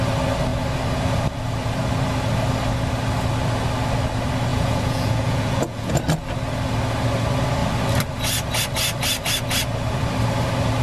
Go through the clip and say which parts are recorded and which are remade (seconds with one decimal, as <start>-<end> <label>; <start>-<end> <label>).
0.0-4.5 recorded; 4.5-6.0 remade; 6.0-10.8 recorded